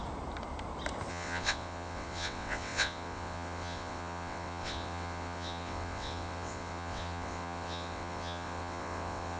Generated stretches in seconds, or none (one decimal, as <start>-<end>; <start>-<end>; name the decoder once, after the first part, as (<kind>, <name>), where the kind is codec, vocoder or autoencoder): 1.1-9.4 (vocoder, WaveNeXt)